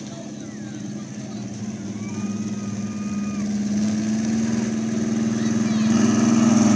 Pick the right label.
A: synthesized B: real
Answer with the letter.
B